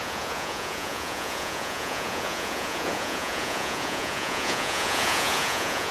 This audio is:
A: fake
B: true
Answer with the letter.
A